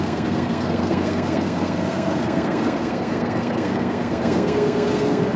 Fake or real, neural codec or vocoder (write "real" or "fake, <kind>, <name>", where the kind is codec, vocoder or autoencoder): fake, codec, SNAC